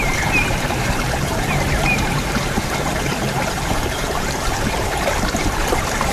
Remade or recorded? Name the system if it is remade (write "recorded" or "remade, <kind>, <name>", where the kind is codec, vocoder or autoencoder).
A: remade, vocoder, BigVGAN v2